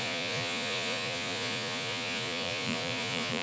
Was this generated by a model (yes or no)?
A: yes